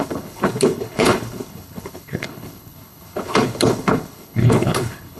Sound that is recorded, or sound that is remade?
remade